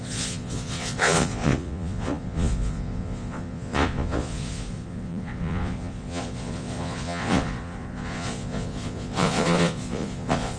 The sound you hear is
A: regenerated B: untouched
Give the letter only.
A